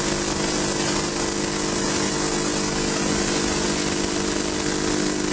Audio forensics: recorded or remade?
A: recorded